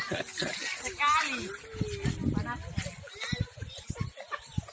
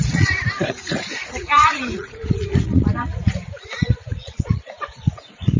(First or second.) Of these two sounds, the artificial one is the second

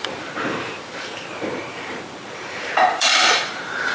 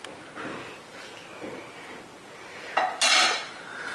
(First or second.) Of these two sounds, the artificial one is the first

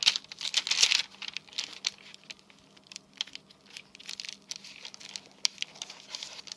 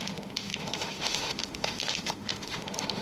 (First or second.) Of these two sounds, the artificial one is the second